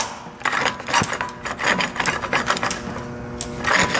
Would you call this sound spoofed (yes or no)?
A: no